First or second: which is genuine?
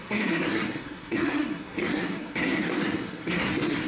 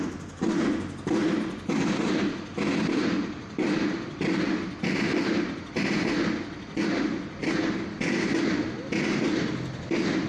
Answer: second